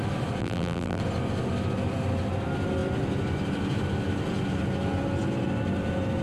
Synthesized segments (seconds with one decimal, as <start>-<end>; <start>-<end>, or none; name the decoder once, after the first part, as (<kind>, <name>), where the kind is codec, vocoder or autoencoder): 0.4-1.0 (vocoder, BigVGAN v2)